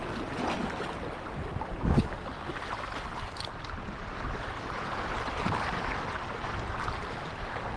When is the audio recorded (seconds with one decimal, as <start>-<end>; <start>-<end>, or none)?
0.0-7.8